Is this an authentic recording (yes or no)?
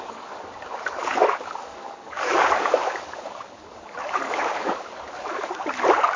no